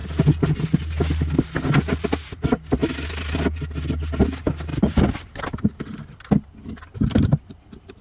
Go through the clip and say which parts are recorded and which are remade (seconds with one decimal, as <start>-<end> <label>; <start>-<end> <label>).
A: 0.0-8.0 recorded